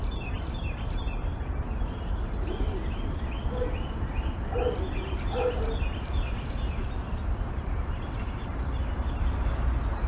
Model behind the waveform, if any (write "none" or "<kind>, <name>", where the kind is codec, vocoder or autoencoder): vocoder, BigVGAN v2